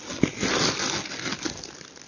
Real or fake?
real